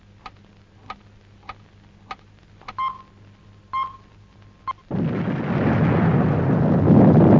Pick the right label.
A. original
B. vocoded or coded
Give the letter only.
A